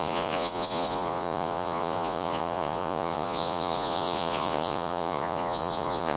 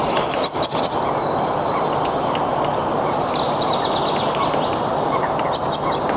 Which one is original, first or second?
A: second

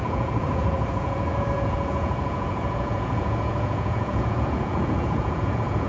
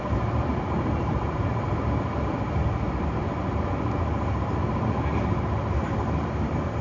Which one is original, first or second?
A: second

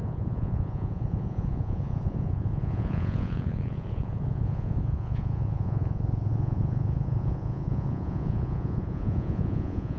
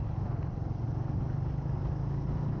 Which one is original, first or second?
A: second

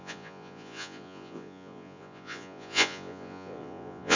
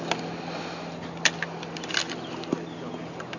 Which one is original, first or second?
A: second